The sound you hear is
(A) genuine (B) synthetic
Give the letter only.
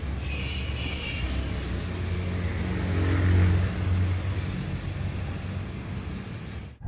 A